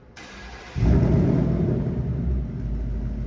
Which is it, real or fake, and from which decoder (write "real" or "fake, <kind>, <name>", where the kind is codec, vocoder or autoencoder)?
real